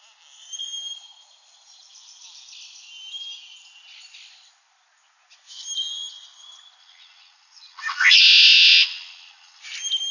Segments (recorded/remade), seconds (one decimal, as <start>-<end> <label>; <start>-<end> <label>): 0.0-6.8 recorded; 6.8-9.6 remade; 9.6-10.1 recorded